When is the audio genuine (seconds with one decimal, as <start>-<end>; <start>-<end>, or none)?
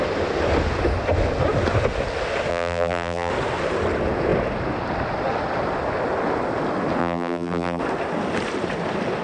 0.0-2.5; 3.3-7.0; 7.8-9.2